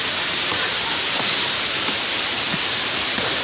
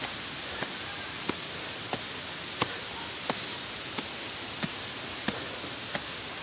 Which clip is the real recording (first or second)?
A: second